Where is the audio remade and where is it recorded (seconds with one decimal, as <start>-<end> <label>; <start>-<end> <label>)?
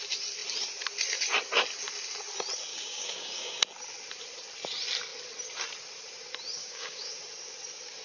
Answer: 0.0-2.7 recorded; 2.7-3.6 remade; 3.6-6.6 recorded; 6.6-7.1 remade; 7.1-8.0 recorded